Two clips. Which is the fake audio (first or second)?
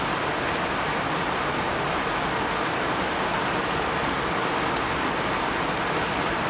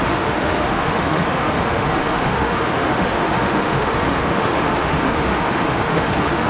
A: second